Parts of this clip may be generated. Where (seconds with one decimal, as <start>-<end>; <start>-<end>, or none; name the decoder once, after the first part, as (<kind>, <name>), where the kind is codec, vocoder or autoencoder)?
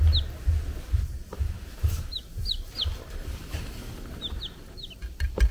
2.1-5.5 (vocoder, BigVGAN v2)